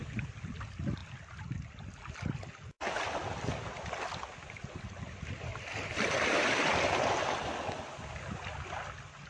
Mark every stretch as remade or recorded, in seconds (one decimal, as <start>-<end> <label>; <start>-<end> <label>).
0.0-5.5 recorded; 5.5-7.0 remade; 7.0-9.3 recorded